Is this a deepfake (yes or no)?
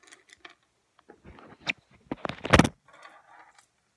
no